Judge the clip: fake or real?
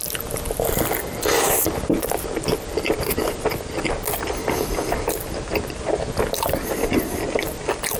real